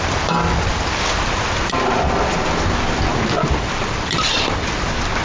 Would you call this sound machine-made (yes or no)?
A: no